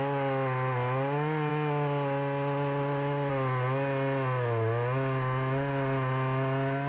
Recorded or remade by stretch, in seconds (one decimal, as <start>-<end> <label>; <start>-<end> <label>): 0.0-6.9 recorded